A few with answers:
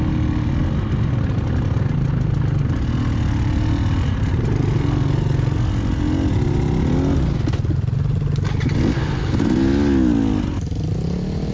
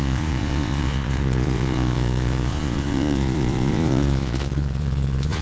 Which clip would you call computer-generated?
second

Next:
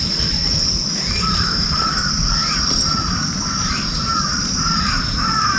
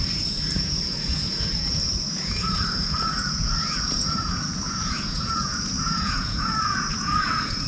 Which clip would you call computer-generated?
second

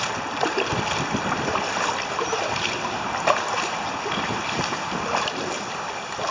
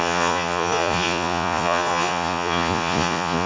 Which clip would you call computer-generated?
second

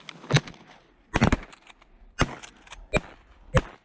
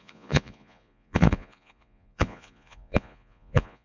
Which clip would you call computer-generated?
second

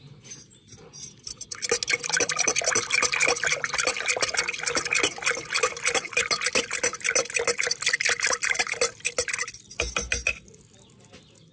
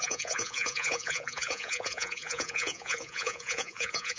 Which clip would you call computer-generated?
second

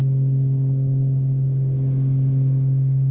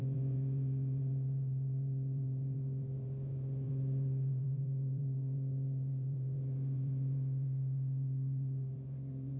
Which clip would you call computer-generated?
second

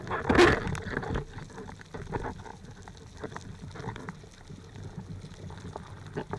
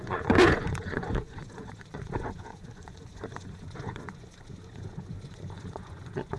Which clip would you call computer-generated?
second